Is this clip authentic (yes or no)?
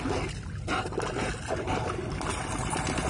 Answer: yes